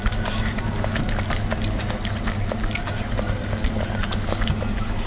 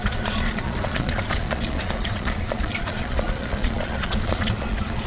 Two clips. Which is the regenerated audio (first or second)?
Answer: second